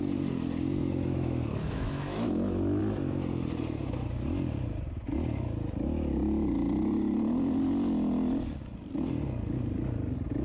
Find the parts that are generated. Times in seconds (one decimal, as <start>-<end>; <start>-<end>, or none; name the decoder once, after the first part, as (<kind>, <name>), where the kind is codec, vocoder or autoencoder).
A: 0.8-2.8 (autoencoder, DAC-VAE)